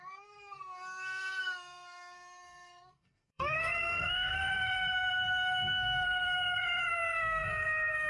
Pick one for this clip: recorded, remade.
remade